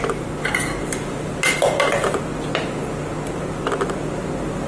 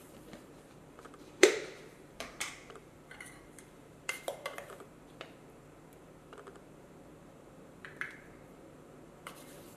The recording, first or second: first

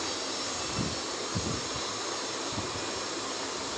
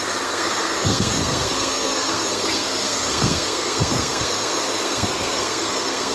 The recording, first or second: first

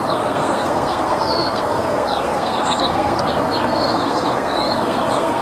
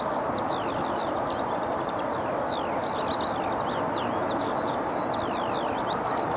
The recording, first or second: second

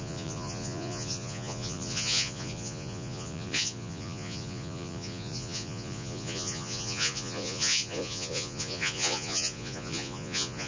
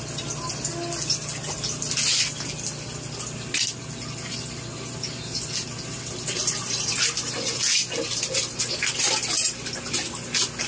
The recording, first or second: second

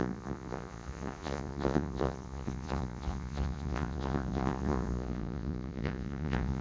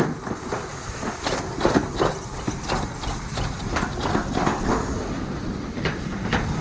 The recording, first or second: second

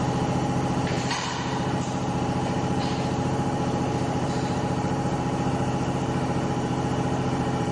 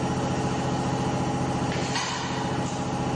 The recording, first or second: second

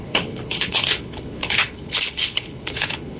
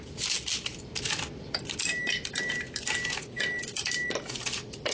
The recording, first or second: second